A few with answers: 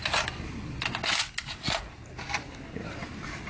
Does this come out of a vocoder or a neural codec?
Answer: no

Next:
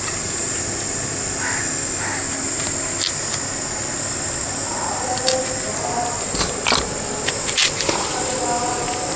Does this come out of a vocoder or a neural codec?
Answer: no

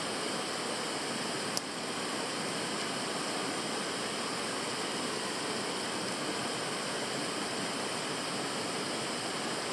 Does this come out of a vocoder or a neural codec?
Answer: no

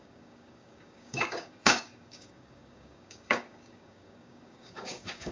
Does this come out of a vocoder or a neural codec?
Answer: yes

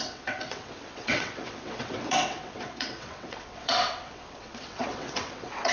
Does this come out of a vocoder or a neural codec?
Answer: yes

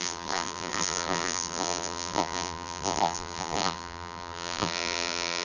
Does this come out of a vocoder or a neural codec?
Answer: yes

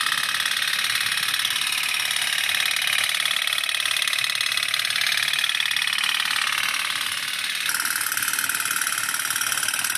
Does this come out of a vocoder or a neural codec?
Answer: no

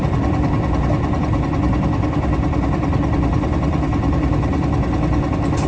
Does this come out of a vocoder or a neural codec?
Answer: no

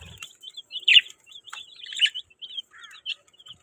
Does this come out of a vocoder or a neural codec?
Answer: yes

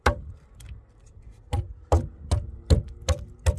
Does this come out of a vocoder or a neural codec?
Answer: no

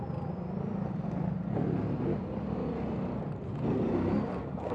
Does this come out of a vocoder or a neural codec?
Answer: no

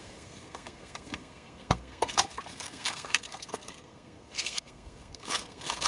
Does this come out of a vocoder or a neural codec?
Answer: yes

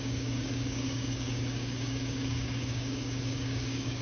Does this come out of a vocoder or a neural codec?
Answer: yes